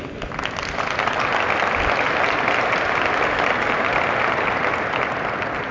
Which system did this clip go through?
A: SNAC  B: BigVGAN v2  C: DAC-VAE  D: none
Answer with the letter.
D